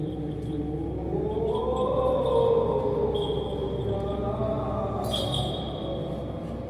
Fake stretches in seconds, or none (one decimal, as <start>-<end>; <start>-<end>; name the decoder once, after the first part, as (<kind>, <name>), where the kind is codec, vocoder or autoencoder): none